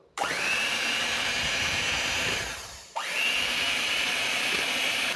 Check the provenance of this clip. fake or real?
fake